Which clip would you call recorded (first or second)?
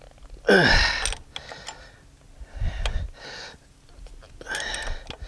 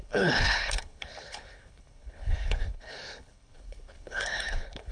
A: first